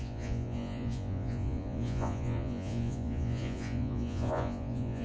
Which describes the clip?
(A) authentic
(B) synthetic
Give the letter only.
B